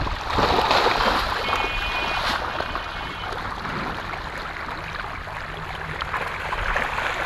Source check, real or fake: real